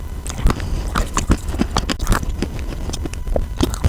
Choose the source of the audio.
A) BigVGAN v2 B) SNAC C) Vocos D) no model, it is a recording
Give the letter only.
A